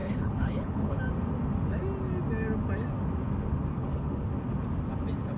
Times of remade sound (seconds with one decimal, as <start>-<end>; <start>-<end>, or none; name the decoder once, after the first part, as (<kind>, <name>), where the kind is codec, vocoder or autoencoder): 0.0-1.0 (codec, HILCodec); 3.7-4.3